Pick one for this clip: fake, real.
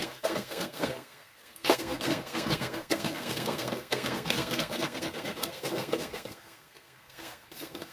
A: fake